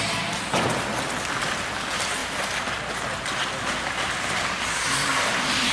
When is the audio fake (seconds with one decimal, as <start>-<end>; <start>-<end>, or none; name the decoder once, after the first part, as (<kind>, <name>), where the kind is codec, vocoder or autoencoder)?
none